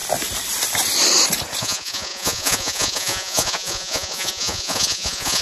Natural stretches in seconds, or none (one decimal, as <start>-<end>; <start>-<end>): 0.0-1.6